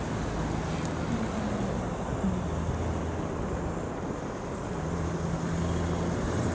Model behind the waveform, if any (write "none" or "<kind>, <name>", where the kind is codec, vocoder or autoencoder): none